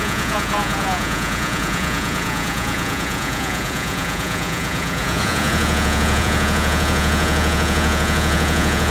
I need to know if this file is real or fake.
fake